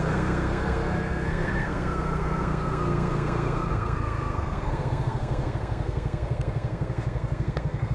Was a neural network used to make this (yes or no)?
yes